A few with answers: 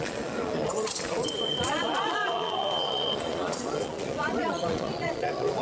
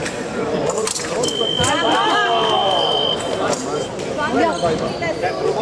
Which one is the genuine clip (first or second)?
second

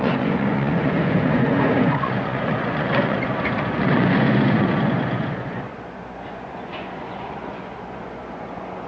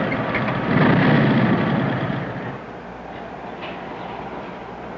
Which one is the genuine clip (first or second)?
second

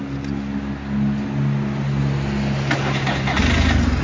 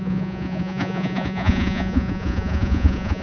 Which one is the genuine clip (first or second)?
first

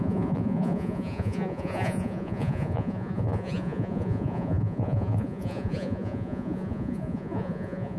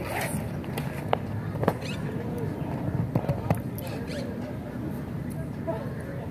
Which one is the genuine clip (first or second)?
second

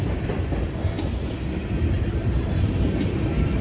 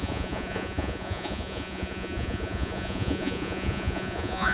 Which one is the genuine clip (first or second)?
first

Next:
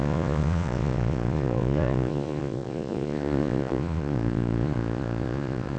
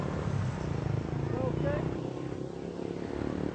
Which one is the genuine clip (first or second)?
second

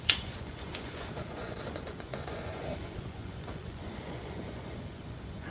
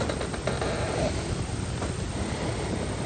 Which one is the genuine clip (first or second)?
second